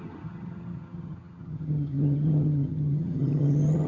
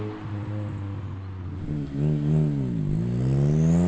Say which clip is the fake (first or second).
first